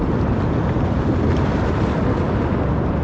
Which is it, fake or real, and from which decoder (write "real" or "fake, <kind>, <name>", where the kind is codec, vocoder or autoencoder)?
real